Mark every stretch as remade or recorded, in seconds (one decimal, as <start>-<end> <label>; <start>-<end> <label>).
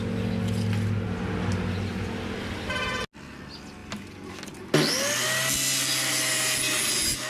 0.0-7.3 recorded